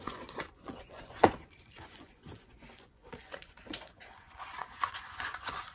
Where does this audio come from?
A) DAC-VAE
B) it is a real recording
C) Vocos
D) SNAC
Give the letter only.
C